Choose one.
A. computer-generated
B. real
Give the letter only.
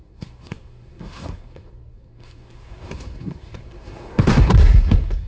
A